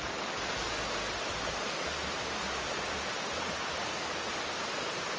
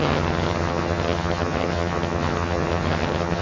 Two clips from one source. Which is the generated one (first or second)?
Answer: second